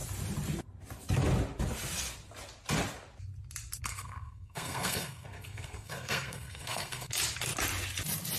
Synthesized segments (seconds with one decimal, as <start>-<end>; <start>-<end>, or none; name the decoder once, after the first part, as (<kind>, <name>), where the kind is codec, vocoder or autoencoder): 3.9-7.1 (codec, SNAC)